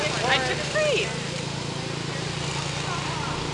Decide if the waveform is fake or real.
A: real